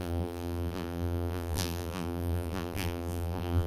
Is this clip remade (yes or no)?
yes